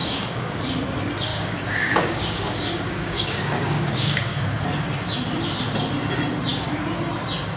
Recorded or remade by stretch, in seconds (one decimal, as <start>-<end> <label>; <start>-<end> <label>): 0.0-0.6 remade; 0.6-1.3 recorded; 1.3-4.6 remade; 4.6-7.6 recorded